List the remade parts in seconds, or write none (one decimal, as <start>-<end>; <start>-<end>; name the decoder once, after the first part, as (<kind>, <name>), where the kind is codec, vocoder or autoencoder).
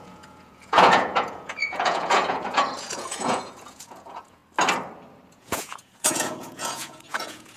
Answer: 0.0-4.4 (vocoder, Vocos); 5.3-7.6